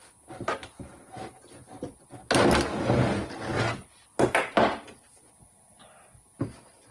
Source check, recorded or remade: recorded